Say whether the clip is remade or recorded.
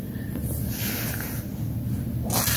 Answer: recorded